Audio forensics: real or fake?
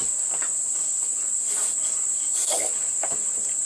real